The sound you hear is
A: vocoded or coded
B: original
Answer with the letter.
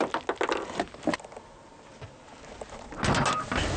B